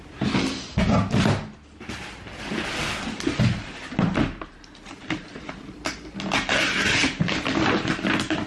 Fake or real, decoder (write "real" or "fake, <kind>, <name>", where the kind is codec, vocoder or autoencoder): real